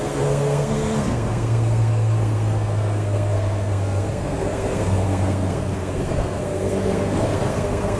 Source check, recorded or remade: remade